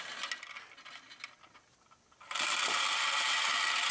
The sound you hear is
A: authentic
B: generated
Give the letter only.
A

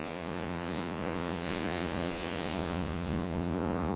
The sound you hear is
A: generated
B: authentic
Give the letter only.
A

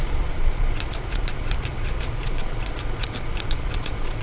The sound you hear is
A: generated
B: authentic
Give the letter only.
A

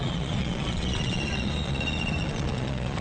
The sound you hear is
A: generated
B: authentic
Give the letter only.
A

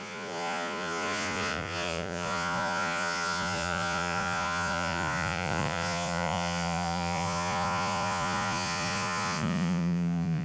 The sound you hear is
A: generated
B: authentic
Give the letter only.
A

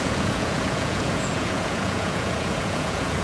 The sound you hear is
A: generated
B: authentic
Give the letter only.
A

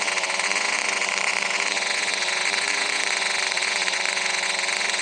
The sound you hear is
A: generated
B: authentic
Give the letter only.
A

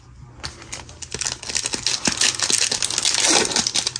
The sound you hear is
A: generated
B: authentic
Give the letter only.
B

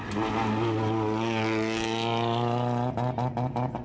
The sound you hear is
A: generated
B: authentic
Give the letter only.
B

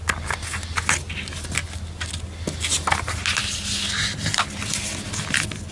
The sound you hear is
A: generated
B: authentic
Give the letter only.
B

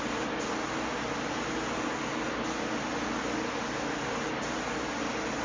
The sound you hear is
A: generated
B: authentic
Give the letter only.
B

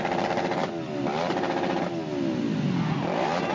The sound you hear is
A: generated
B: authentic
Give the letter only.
B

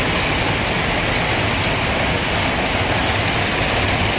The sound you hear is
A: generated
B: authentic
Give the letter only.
B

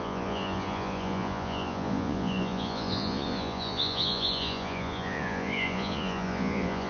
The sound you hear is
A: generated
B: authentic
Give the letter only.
A